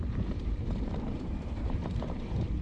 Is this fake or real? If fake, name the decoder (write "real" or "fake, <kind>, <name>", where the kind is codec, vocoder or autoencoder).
fake, vocoder, BigVGAN v2